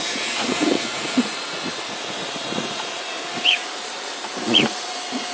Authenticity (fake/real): fake